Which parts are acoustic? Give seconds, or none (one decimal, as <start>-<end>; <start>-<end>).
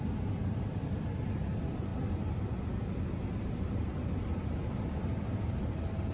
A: none